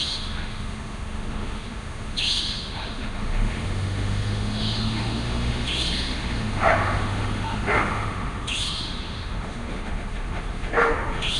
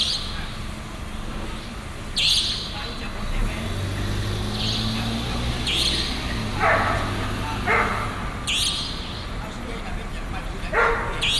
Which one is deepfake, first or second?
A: first